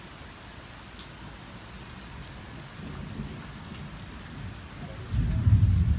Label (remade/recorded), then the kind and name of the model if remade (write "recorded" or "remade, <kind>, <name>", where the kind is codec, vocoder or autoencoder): recorded